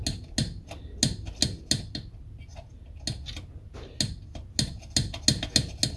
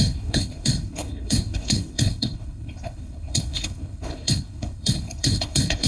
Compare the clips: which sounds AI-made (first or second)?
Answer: second